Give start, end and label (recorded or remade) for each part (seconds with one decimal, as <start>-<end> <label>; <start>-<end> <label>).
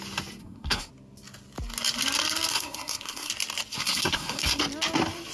0.0-0.4 recorded; 0.4-0.9 remade; 0.9-2.5 recorded; 2.5-3.3 remade; 3.3-3.7 recorded; 3.7-4.6 remade; 4.6-5.3 recorded